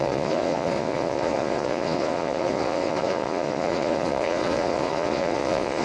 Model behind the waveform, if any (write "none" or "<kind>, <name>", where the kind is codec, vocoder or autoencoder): vocoder, Vocos